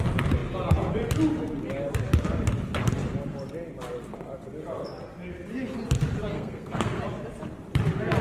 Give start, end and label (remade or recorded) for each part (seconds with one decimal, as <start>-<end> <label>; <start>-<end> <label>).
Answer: 0.0-6.3 recorded; 6.3-7.0 remade; 7.0-8.2 recorded

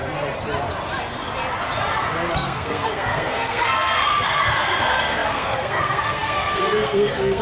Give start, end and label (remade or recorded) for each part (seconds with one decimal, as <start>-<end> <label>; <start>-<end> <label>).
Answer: 0.0-2.3 recorded; 2.3-7.4 remade

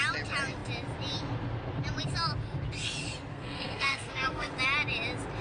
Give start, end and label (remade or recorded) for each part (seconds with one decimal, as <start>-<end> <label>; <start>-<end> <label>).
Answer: 0.0-3.3 recorded; 3.3-4.5 remade; 4.5-5.4 recorded

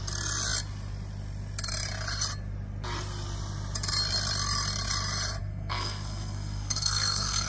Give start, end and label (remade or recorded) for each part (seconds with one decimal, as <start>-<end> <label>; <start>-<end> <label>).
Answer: 0.0-5.4 recorded; 5.4-7.5 remade

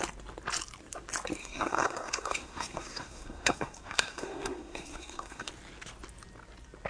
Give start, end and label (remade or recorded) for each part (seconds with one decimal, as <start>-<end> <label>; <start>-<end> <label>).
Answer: 0.0-1.4 recorded; 1.4-5.5 remade; 5.5-6.9 recorded

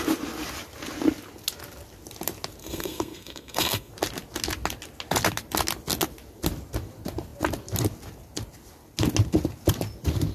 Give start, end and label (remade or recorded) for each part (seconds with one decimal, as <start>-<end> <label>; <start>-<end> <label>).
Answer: 0.0-2.6 recorded; 2.6-3.9 remade; 3.9-10.3 recorded